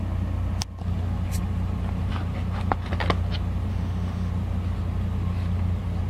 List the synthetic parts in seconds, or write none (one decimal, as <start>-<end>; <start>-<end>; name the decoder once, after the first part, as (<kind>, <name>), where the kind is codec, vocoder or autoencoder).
3.7-4.3 (autoencoder, DAC-VAE)